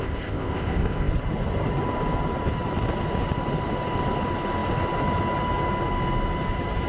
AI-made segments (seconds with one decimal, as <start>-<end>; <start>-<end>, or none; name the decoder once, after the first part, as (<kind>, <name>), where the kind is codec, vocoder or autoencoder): 0.0-1.1 (codec, ZipCodec)